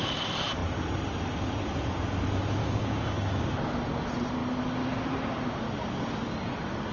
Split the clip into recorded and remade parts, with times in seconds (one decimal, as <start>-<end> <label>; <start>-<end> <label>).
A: 0.0-2.6 recorded; 2.6-3.4 remade; 3.4-6.9 recorded